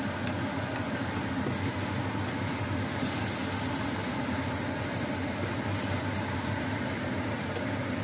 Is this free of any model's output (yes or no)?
yes